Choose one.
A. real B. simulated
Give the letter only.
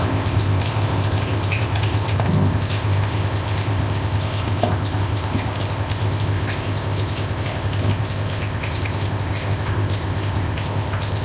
B